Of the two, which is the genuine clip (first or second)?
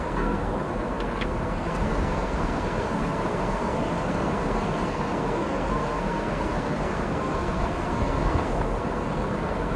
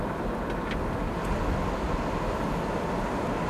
second